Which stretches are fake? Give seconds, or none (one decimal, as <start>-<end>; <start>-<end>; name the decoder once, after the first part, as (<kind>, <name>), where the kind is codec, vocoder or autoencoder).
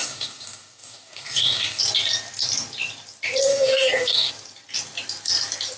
0.0-1.8 (codec, DAC); 3.5-4.3